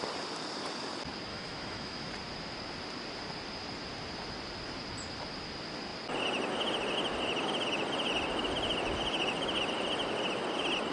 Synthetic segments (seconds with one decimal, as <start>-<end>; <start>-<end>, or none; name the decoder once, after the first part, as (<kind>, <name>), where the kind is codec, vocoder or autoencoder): 1.3-2.1 (autoencoder, DAC-VAE)